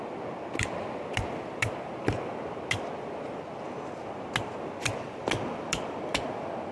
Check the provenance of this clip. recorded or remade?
recorded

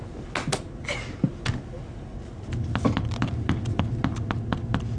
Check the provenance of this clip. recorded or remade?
recorded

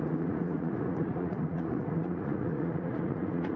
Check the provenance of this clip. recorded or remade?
remade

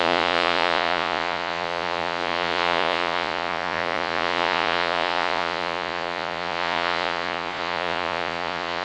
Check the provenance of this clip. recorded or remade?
remade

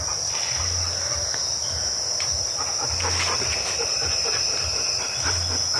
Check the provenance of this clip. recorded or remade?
recorded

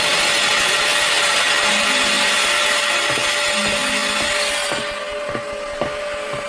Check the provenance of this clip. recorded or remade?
recorded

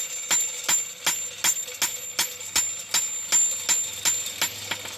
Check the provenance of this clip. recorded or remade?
recorded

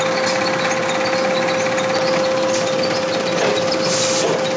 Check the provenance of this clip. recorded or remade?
recorded